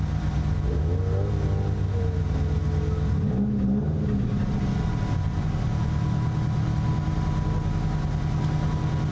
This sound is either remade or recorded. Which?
recorded